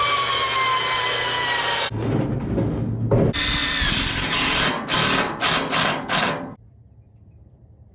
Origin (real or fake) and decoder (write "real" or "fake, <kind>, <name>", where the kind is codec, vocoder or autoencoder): real